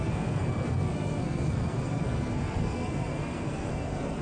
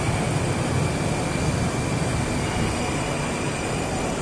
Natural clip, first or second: second